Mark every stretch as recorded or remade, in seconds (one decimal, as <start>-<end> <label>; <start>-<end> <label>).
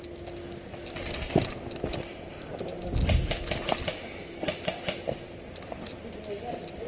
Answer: 0.0-6.9 recorded